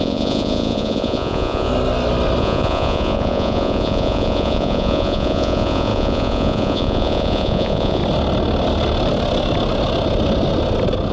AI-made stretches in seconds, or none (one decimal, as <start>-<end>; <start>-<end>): 0.0-1.7; 2.4-8.0